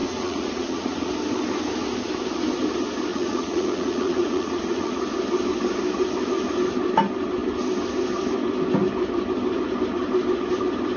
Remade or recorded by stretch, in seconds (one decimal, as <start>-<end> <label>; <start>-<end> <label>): 0.0-1.1 remade; 1.1-3.1 recorded; 3.1-5.0 remade; 5.0-11.0 recorded